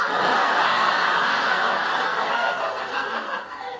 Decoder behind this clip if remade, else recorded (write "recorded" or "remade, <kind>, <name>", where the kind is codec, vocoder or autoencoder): remade, codec, SNAC